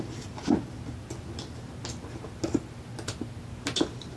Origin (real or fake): real